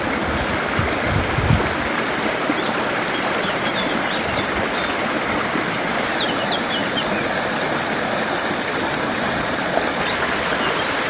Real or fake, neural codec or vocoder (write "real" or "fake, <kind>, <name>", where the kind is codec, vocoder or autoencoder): real